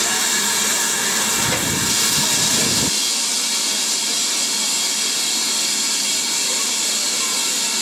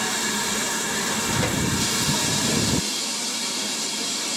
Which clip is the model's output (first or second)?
second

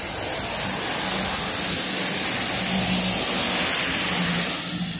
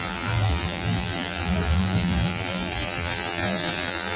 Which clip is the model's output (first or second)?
second